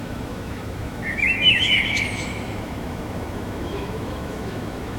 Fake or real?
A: fake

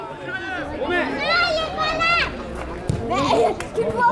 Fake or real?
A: real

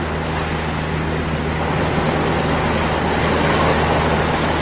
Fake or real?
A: real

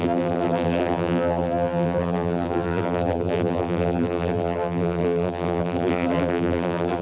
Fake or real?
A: fake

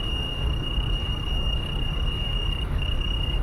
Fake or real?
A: fake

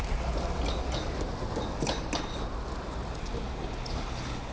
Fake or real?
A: real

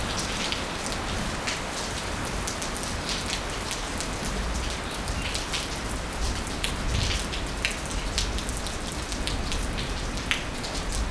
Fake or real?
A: real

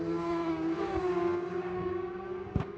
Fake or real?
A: fake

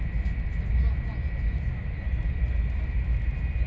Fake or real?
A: real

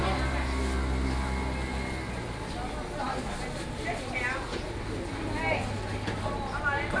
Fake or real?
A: real